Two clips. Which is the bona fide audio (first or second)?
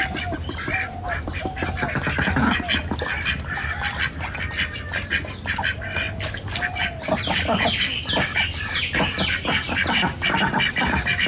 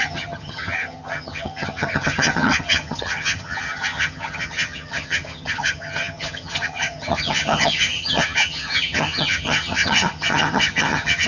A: first